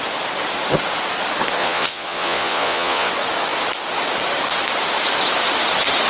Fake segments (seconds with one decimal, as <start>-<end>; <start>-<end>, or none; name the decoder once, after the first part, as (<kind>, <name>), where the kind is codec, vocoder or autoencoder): 1.6-3.1 (vocoder, Vocos)

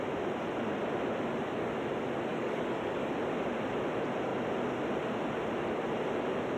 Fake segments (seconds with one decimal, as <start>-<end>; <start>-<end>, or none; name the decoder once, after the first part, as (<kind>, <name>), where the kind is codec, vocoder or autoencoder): 2.3-3.1 (codec, DAC)